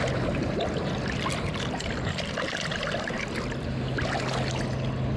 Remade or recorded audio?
recorded